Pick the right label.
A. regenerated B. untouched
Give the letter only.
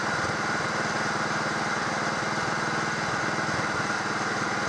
B